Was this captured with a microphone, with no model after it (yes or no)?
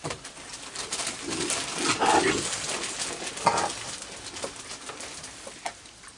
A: yes